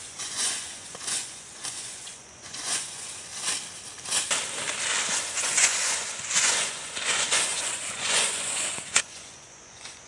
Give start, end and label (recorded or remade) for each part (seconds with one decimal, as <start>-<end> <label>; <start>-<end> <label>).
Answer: 0.0-3.3 remade; 3.3-5.1 recorded; 5.1-10.1 remade